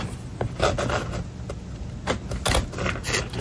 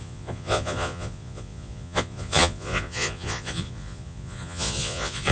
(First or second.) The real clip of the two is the first